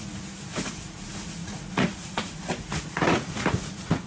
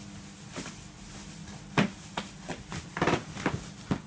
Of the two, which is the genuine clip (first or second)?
second